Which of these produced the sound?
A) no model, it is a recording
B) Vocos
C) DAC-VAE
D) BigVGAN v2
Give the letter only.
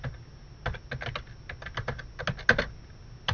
A